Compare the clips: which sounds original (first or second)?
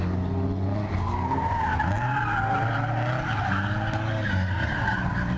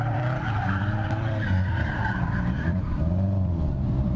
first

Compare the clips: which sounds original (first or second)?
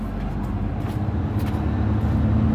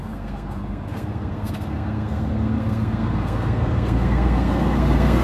first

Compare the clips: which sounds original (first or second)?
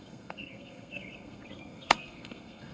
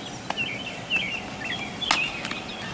second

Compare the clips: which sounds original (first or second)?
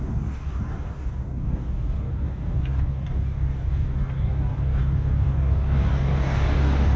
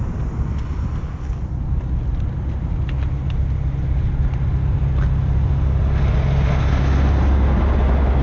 second